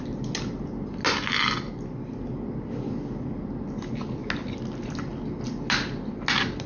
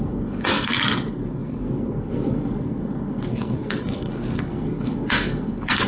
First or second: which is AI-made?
second